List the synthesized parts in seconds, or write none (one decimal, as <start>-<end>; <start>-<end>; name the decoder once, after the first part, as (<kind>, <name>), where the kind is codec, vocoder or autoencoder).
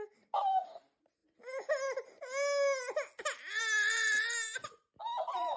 none